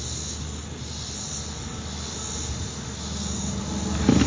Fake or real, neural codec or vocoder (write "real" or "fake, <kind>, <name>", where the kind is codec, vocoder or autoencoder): real